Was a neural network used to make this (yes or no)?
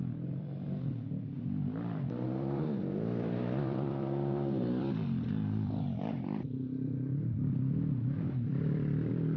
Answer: yes